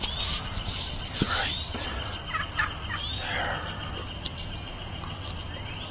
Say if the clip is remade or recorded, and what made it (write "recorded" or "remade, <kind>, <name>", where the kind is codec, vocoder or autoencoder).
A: recorded